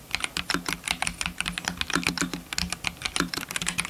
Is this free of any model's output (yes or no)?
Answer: yes